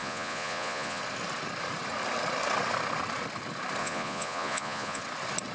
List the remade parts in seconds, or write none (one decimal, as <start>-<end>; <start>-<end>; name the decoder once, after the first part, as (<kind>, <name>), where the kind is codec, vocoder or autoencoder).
0.0-1.0 (vocoder, Vocos); 3.8-5.0